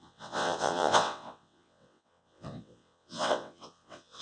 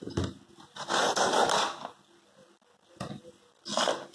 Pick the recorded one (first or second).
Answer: second